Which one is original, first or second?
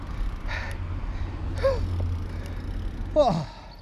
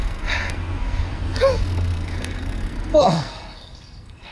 first